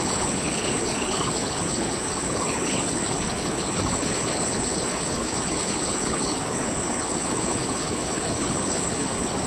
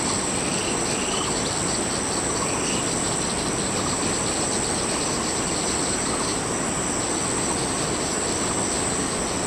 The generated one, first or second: first